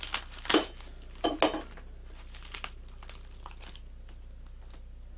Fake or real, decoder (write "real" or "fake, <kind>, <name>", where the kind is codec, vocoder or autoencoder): real